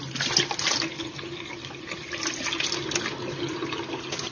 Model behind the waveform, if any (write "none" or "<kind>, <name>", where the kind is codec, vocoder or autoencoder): none